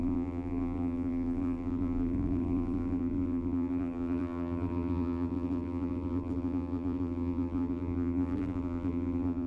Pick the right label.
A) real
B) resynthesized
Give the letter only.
B